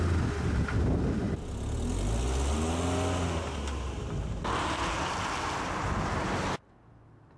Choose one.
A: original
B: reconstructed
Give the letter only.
A